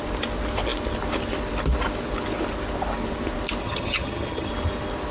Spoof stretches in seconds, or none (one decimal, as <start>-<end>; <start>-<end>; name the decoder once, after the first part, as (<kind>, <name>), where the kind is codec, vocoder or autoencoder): 3.6-4.5 (vocoder, HiFi-GAN)